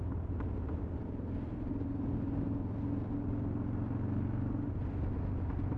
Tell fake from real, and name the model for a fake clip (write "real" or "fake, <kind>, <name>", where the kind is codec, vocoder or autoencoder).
real